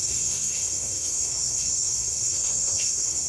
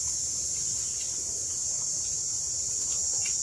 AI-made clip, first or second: first